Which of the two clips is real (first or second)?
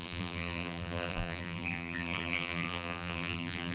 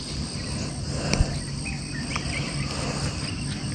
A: second